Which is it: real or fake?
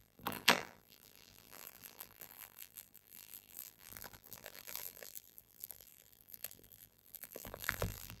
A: fake